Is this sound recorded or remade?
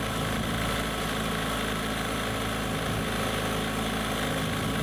recorded